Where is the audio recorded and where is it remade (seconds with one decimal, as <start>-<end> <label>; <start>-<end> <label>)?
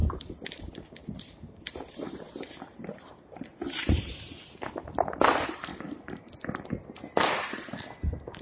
0.0-4.2 remade; 4.2-5.7 recorded; 5.7-6.7 remade; 6.7-8.4 recorded